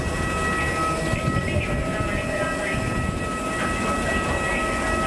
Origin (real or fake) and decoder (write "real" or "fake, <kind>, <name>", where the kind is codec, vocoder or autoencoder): real